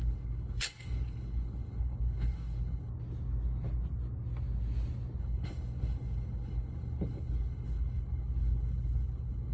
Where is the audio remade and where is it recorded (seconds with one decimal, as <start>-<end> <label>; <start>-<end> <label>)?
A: 0.0-2.9 remade; 2.9-5.2 recorded; 5.2-9.5 remade